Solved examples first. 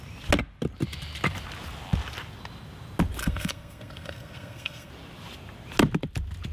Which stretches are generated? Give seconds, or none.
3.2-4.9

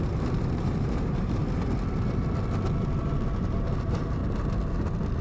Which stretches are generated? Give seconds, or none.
0.0-1.4; 3.0-4.2

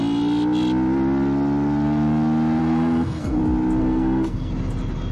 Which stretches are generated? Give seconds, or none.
2.6-3.4; 3.8-4.5

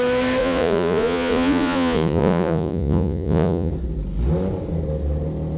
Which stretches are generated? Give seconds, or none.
0.4-3.7

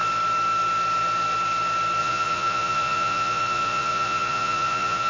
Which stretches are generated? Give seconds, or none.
2.0-5.1

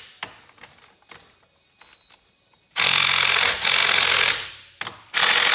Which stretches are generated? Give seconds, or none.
none

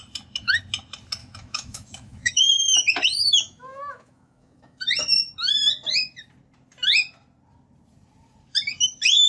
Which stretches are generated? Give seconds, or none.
1.2-2.4; 3.2-4.8

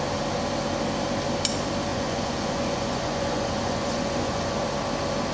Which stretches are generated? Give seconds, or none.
1.9-4.6